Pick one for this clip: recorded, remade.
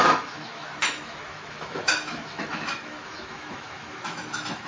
remade